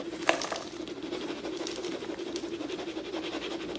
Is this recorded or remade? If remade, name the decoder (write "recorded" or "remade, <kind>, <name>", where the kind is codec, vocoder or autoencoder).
recorded